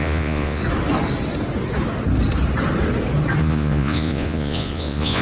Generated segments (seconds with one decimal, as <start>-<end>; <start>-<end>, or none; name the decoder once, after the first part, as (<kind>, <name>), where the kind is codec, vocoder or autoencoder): 0.0-0.6 (vocoder, Vocos); 3.4-5.2